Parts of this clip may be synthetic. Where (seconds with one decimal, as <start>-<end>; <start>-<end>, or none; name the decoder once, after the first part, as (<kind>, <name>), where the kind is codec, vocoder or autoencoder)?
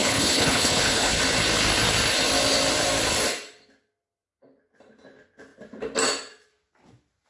0.0-1.2 (codec, HILCodec)